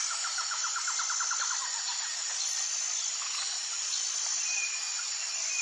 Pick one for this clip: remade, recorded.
recorded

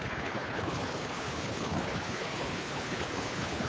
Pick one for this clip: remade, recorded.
remade